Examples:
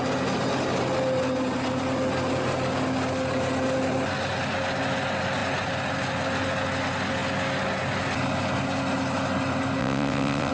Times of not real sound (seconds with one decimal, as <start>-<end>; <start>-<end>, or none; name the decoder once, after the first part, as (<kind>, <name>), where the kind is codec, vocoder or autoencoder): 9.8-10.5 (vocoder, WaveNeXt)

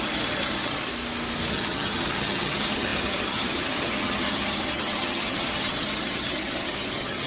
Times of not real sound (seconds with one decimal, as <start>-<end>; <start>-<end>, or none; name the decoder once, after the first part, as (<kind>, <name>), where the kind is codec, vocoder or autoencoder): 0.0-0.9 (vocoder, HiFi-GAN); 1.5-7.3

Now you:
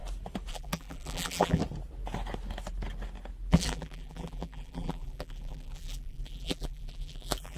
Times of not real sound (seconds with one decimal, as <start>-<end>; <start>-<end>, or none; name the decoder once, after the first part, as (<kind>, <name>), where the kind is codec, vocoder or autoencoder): 0.5-1.6 (vocoder, BigVGAN v2); 3.5-7.6

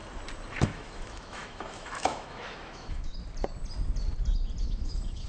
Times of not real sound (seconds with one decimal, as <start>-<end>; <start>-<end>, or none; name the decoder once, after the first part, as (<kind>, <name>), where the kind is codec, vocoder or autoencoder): 0.6-3.1 (autoencoder, DAC-VAE); 4.6-5.3